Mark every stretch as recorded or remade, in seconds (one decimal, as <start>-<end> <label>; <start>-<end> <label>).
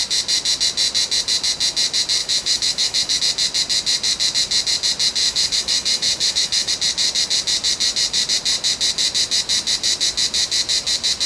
0.0-2.2 recorded; 2.2-3.2 remade; 3.2-5.2 recorded; 5.2-6.7 remade; 6.7-11.3 recorded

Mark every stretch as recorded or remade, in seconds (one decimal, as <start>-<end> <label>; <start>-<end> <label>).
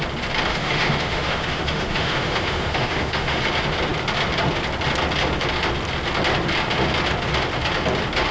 0.0-0.5 recorded; 0.5-3.4 remade; 3.4-8.3 recorded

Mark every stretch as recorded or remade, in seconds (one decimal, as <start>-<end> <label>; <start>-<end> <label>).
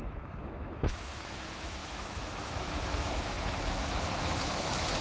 0.0-5.0 remade